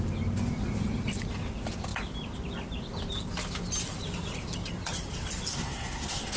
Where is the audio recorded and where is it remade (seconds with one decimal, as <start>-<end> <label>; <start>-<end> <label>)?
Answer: 0.0-5.5 recorded; 5.5-6.4 remade